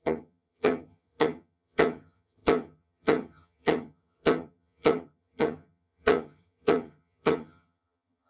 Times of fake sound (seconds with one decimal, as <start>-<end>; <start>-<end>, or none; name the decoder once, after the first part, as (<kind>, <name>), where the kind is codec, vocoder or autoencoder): 0.0-8.3 (vocoder, HiFi-GAN)